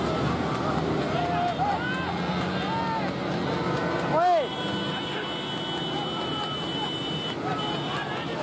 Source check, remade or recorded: recorded